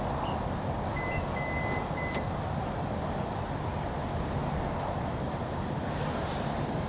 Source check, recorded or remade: recorded